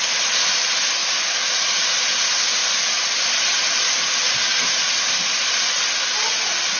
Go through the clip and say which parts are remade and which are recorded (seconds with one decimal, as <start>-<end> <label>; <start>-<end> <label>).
0.0-6.8 recorded